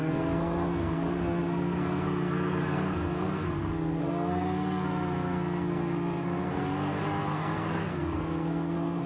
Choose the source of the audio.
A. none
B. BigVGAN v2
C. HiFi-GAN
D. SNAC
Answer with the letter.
D